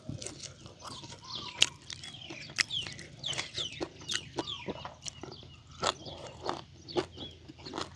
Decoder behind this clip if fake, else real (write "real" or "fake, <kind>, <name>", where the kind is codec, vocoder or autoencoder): real